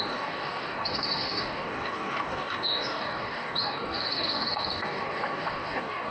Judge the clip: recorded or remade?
remade